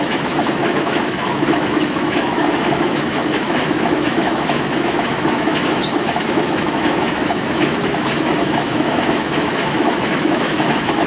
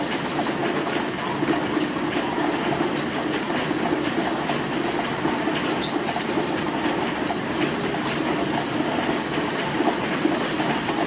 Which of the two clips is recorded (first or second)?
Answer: second